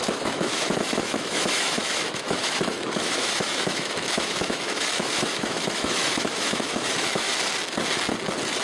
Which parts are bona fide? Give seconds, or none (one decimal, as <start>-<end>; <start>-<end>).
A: 7.3-8.6